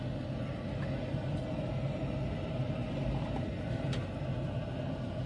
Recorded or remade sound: recorded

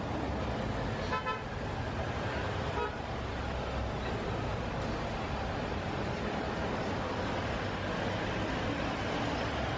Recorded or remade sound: recorded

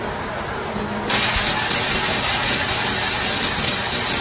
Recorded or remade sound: recorded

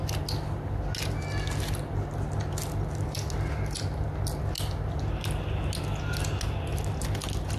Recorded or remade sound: recorded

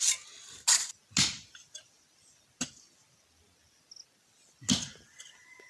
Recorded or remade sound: recorded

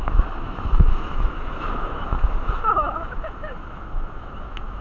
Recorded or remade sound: remade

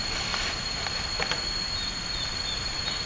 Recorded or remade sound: recorded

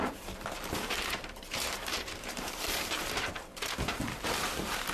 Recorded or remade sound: remade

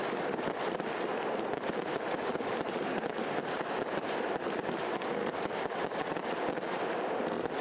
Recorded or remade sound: recorded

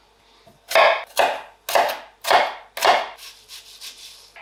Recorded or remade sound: recorded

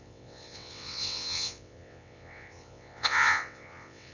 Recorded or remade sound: remade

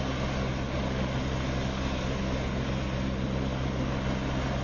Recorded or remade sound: recorded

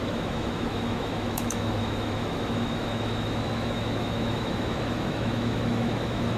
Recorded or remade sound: remade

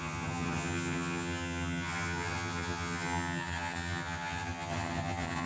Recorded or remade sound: remade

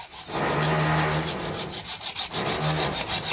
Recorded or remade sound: recorded